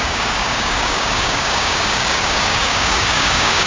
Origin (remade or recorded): remade